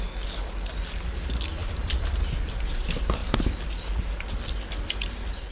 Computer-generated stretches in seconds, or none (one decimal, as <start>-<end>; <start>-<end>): 1.6-2.1; 3.2-4.0

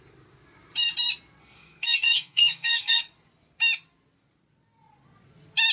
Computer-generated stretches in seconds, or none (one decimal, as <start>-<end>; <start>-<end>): 1.4-3.0

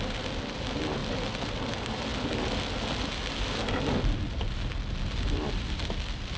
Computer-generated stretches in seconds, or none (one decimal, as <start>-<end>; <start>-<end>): none

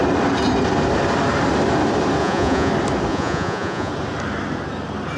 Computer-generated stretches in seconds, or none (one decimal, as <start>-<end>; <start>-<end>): 2.2-2.7; 3.1-3.9

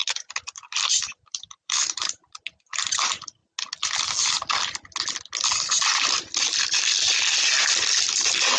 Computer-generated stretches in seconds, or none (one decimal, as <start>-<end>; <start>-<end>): 0.0-2.4

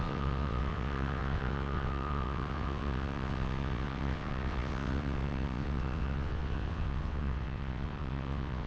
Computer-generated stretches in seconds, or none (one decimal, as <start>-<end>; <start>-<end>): 0.0-8.7

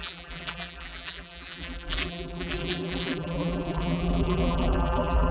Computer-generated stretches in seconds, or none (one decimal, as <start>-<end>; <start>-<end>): 0.0-5.3